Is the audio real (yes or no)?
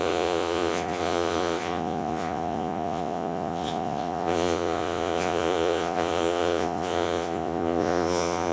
no